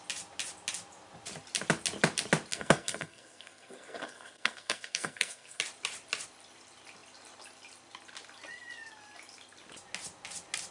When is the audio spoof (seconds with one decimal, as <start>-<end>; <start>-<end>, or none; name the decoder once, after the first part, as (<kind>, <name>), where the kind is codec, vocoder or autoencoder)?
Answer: 2.5-5.6 (codec, SNAC)